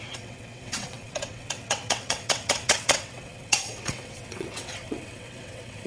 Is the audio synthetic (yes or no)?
yes